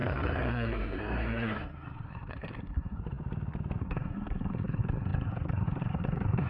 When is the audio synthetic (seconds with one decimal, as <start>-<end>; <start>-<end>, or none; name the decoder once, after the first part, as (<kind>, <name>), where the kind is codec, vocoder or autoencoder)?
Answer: 0.0-3.0 (codec, SNAC); 3.8-6.5